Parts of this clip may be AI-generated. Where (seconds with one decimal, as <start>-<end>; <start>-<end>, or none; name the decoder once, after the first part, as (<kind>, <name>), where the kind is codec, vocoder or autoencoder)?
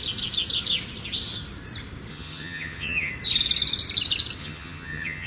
2.1-3.1 (vocoder, HiFi-GAN); 4.4-5.3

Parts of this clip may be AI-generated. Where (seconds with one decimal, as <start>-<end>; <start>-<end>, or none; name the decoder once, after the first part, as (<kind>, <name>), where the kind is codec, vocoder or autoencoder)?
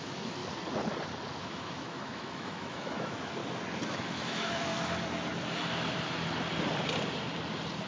0.0-0.4 (autoencoder, DAC-VAE); 1.4-3.4; 3.9-4.7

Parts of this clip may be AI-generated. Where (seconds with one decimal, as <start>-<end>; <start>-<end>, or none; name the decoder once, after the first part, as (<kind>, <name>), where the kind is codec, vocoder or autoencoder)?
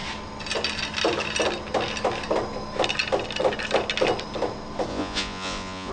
4.9-5.9 (vocoder, Vocos)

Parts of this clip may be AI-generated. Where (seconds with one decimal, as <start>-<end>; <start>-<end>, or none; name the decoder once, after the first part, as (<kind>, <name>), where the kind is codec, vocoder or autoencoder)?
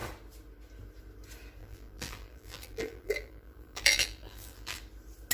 1.6-4.8 (vocoder, BigVGAN v2)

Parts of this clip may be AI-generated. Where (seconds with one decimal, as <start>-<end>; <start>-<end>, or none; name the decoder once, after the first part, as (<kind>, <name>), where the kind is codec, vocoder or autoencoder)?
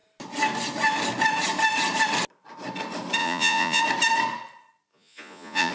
3.2-3.8 (vocoder, Vocos); 4.9-5.7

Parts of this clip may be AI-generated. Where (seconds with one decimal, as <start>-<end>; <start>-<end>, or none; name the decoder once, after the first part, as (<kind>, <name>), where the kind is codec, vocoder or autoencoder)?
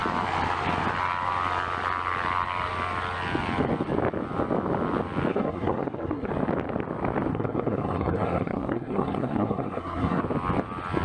5.3-6.3 (codec, SNAC); 7.3-10.2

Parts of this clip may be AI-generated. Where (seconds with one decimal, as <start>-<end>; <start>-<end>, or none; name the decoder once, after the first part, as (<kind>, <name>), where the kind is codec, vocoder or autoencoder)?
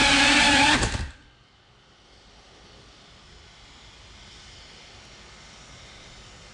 none